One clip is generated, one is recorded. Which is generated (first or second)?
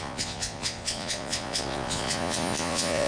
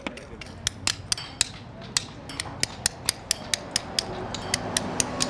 first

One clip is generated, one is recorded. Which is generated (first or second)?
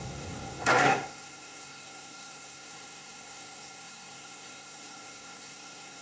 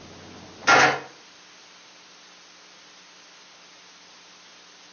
first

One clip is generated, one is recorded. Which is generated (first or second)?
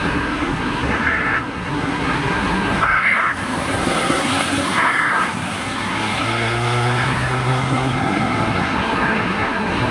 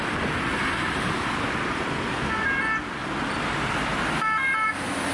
first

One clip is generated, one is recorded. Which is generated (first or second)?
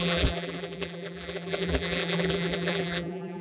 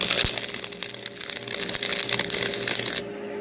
first